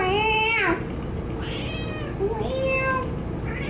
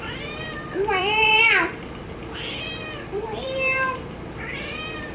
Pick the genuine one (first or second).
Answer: first